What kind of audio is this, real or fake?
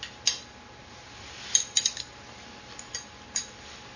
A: real